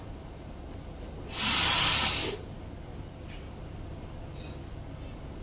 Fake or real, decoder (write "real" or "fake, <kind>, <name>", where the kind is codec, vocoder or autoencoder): real